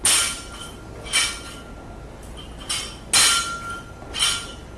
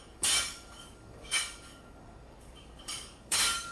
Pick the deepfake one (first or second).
second